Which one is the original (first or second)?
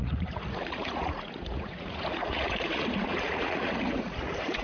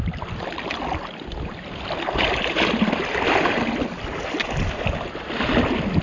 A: second